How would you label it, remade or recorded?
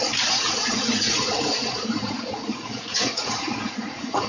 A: remade